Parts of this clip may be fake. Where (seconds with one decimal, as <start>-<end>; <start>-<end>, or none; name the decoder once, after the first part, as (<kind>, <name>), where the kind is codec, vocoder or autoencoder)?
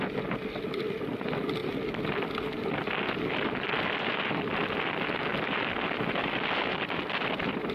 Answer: none